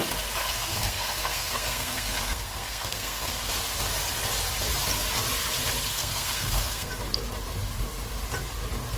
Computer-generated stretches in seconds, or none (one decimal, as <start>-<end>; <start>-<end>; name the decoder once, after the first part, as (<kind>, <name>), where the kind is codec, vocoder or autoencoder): 0.4-3.5 (codec, SNAC); 5.9-6.9